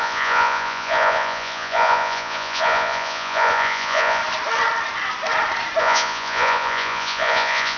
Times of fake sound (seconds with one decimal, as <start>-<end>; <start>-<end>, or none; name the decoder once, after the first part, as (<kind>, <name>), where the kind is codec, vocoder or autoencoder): 0.0-4.2 (vocoder, Vocos); 5.8-7.8